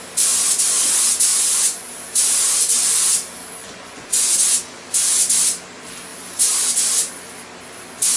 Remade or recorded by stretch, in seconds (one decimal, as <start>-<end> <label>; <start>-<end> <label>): 0.0-1.3 recorded; 1.3-1.9 remade; 1.9-3.6 recorded; 3.6-4.6 remade; 4.6-8.2 recorded